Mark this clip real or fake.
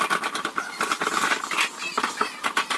real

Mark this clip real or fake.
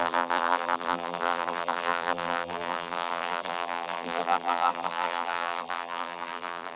fake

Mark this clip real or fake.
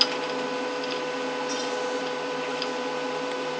real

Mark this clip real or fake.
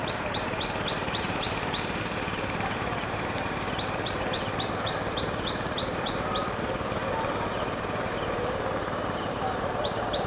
fake